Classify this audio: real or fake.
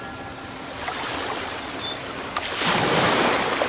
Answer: real